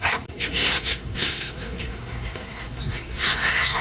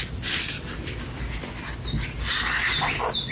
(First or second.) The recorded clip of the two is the second